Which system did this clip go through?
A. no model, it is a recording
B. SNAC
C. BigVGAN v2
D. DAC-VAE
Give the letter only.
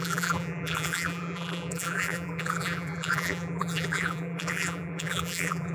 C